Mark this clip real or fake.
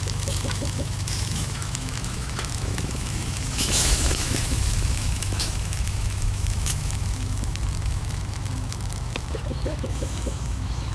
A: fake